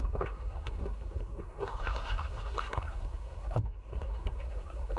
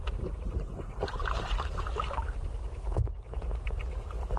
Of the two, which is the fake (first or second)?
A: first